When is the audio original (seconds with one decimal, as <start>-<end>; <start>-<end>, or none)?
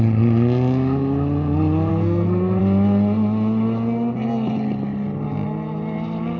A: 0.0-1.9; 2.6-6.4